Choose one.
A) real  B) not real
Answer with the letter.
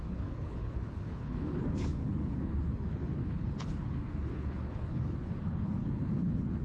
B